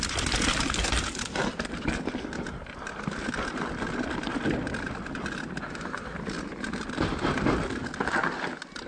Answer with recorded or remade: recorded